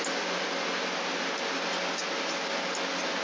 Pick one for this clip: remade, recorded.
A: recorded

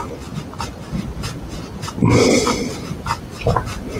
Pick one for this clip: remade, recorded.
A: recorded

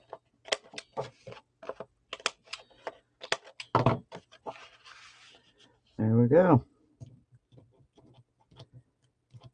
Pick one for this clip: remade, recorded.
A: recorded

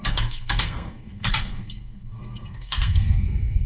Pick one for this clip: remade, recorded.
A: remade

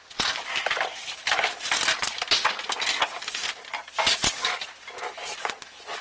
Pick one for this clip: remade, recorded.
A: recorded